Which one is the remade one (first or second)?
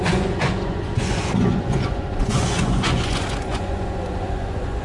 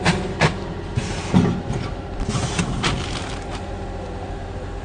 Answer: first